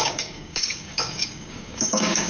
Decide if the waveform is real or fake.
fake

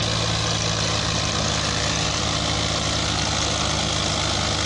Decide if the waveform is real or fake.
real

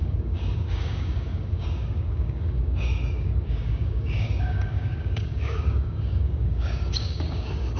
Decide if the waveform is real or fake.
fake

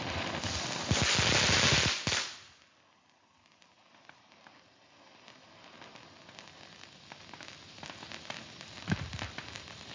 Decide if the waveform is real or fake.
real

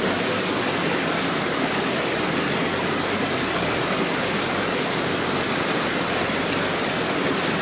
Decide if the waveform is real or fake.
real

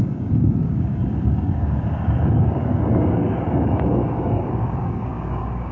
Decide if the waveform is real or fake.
fake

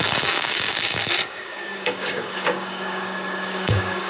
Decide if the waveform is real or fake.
fake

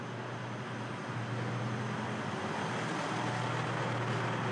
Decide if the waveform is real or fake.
real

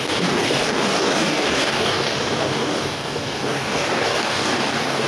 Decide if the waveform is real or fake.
fake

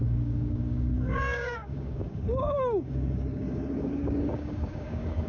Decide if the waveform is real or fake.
fake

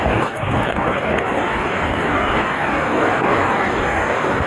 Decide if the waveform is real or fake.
fake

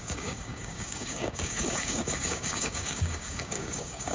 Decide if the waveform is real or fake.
fake